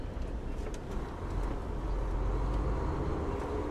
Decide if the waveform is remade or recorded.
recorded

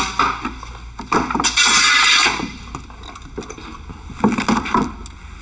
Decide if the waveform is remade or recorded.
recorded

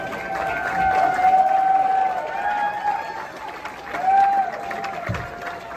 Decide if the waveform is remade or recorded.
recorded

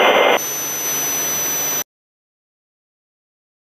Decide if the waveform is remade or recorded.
recorded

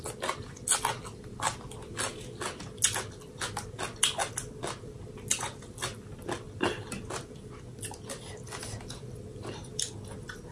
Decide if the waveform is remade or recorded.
recorded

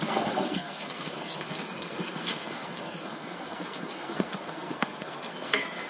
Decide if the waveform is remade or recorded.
remade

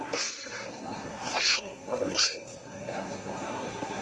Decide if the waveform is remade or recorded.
remade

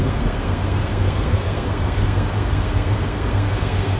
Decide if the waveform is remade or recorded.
remade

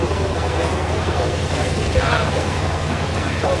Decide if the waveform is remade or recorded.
remade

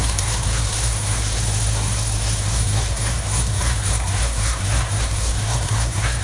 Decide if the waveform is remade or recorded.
remade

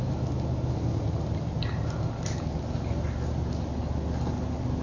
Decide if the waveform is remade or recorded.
recorded